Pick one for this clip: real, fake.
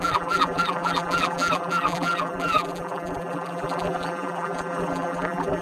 fake